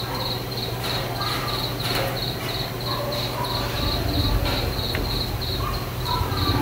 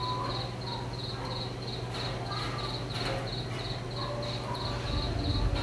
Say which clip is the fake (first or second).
first